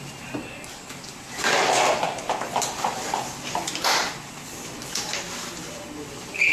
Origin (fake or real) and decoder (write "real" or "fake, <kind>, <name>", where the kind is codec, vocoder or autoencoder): real